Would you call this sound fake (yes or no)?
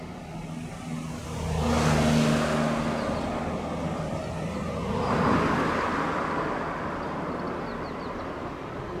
no